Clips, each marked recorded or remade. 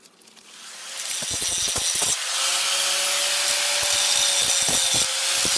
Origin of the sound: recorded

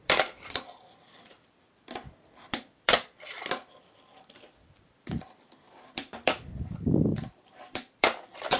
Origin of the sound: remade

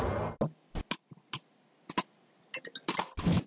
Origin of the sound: recorded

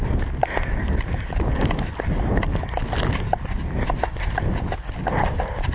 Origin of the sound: recorded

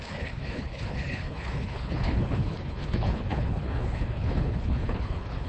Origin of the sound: remade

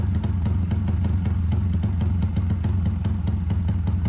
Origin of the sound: recorded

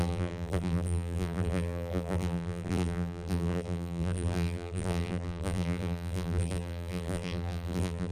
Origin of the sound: remade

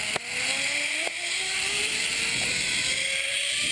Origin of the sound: recorded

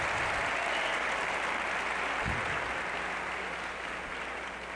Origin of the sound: recorded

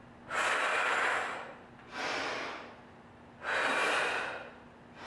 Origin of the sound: recorded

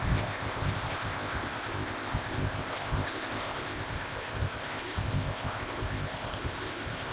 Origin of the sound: remade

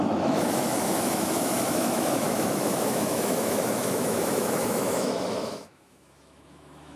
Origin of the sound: remade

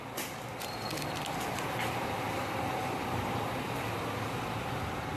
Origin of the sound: remade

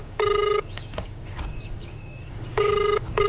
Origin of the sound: remade